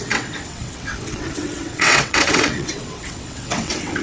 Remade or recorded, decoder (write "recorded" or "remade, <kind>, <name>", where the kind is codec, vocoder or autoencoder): remade, vocoder, WaveNeXt